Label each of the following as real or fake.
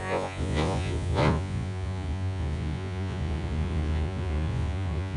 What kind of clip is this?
fake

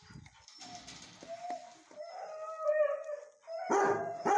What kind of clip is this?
real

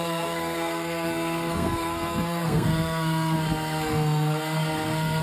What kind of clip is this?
fake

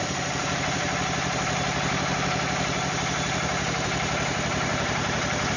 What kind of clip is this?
fake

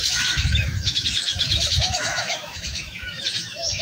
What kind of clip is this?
fake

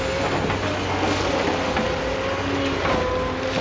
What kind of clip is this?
real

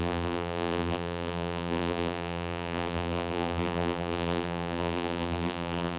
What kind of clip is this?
fake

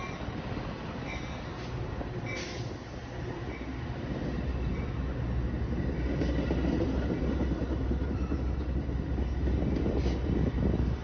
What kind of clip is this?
real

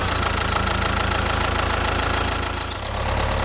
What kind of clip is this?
real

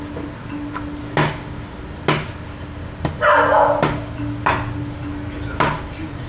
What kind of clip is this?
real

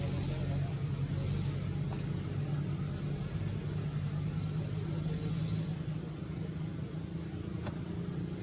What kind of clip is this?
real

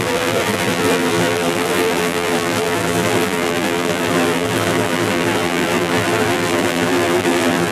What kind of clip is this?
fake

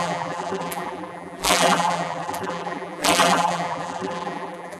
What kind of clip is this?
fake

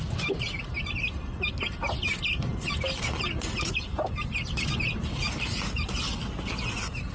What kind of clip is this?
real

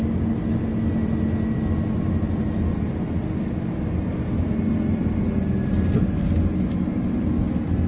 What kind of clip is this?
real